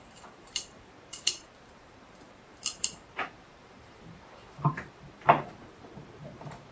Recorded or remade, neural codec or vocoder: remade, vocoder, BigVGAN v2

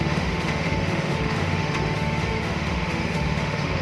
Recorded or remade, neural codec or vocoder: remade, autoencoder, DAC-VAE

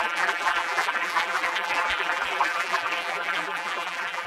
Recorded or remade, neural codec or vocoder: remade, vocoder, BigVGAN v2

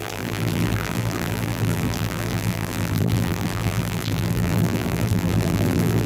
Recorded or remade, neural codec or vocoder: remade, vocoder, BigVGAN v2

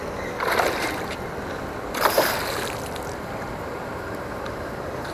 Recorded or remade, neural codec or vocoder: recorded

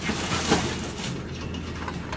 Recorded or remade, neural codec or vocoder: recorded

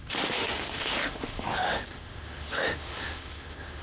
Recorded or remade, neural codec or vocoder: remade, autoencoder, DAC-VAE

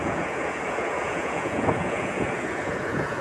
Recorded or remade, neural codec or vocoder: remade, vocoder, Vocos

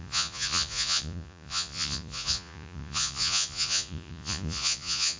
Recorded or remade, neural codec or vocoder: remade, vocoder, Vocos